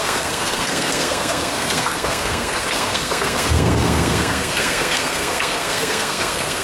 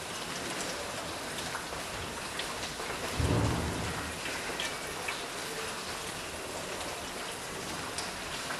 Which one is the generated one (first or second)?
first